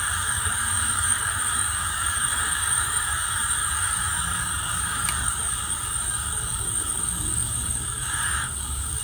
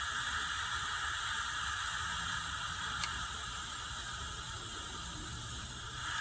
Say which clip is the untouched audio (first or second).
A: second